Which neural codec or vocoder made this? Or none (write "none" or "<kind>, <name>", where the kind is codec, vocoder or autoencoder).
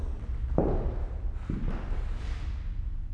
none